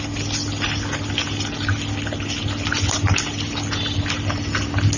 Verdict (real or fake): real